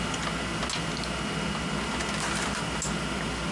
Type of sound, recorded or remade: recorded